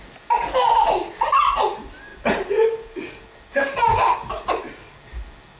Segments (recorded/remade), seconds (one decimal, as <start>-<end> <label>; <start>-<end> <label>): 0.0-5.6 recorded